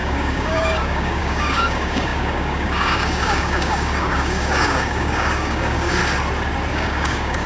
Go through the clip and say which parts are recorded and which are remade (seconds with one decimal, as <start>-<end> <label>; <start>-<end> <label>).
0.0-6.0 remade; 6.0-6.7 recorded; 6.7-7.5 remade

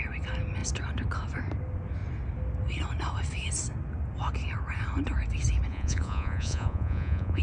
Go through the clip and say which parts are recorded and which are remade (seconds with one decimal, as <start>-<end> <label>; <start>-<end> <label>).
0.0-5.7 recorded; 5.7-7.4 remade

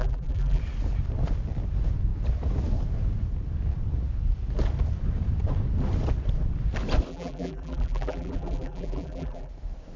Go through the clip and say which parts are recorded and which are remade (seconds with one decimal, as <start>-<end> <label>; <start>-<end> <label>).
0.0-0.6 remade; 0.6-7.1 recorded; 7.1-9.5 remade; 9.5-10.0 recorded

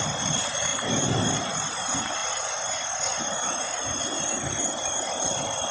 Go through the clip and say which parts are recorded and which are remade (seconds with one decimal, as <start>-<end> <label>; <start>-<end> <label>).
0.0-5.7 recorded